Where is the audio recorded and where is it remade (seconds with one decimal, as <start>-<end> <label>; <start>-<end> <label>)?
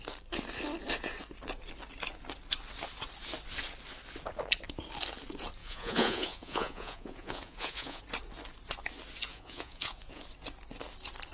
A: 0.0-5.6 recorded; 5.6-8.0 remade; 8.0-9.3 recorded; 9.3-10.2 remade; 10.2-11.3 recorded